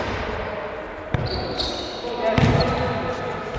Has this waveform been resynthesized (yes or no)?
no